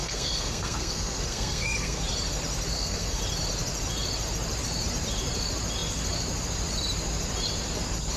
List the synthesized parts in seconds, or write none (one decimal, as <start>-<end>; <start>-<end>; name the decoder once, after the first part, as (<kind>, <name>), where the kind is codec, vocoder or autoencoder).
0.0-2.0 (codec, SNAC); 2.7-3.2